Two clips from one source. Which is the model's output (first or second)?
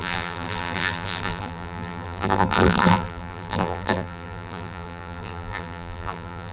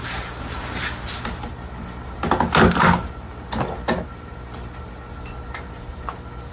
first